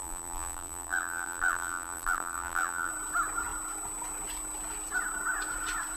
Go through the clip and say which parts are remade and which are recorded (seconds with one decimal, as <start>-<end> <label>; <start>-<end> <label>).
0.0-2.9 remade; 2.9-6.0 recorded

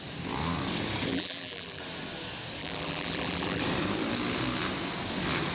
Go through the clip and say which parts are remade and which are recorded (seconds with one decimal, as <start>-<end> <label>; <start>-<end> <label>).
0.0-1.1 recorded; 1.1-1.8 remade; 1.8-2.6 recorded; 2.6-3.6 remade; 3.6-5.5 recorded

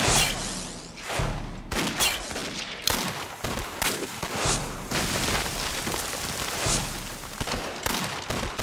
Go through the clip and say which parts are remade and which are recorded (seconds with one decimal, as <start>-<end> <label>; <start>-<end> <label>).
0.0-8.6 recorded

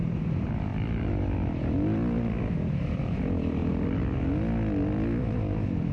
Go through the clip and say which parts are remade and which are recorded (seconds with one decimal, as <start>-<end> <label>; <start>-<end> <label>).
0.0-3.6 remade; 3.6-5.2 recorded; 5.2-5.9 remade

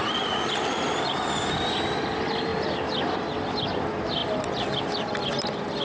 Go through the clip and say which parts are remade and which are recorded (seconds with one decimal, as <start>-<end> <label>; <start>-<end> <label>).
0.0-2.5 recorded; 2.5-3.5 remade; 3.5-5.8 recorded